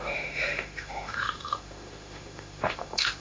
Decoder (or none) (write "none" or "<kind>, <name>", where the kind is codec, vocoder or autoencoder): autoencoder, DAC-VAE